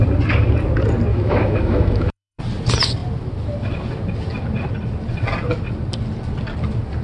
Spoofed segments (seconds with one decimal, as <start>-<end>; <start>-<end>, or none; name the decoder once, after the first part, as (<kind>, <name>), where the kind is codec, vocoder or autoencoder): 1.1-2.4 (autoencoder, DAC-VAE)